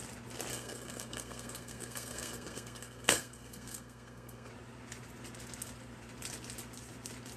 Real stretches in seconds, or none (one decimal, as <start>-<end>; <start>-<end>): 0.0-0.5; 4.5-7.4

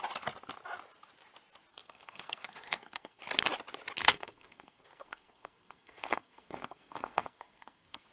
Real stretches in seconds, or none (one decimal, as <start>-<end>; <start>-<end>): 0.0-1.7; 3.2-4.0

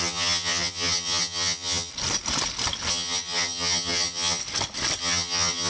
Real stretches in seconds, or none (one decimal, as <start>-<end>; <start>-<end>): 1.9-2.9; 4.4-5.0